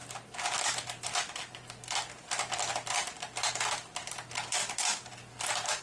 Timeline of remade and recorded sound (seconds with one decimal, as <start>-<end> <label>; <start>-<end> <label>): 0.0-5.8 recorded